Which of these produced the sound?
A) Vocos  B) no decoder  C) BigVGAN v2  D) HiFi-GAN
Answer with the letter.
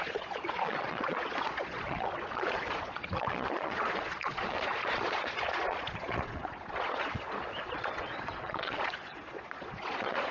A